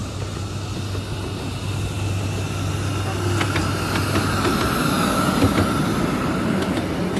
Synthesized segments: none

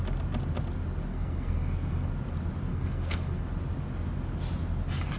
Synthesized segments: 1.1-2.1 (codec, SNAC); 2.7-3.4